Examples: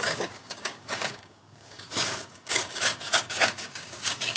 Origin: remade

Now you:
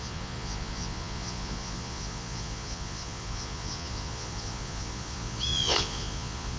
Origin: remade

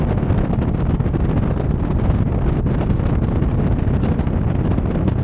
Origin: recorded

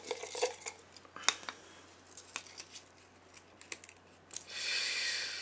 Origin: recorded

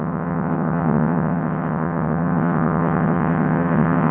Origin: remade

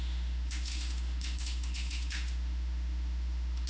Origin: remade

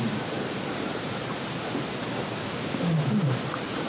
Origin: remade